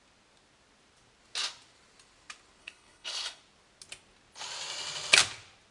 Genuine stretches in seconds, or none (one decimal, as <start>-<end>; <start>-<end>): 0.0-2.6; 3.4-5.7